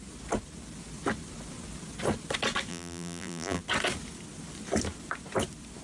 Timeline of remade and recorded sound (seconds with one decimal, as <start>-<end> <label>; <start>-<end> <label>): 0.0-2.7 recorded; 2.7-3.6 remade; 3.6-5.8 recorded